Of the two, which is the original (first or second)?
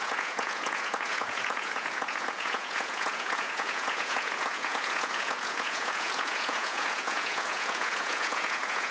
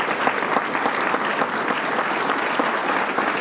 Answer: second